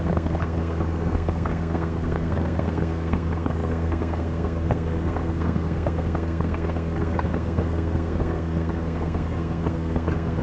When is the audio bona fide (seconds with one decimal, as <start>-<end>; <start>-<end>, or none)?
none